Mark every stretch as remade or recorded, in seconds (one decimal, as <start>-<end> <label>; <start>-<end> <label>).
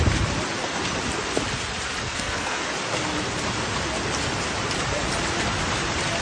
0.0-2.0 recorded; 2.0-2.6 remade; 2.6-6.2 recorded